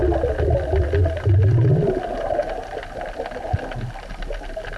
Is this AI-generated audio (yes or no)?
no